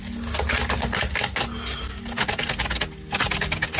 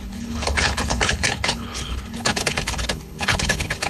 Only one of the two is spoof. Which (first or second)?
second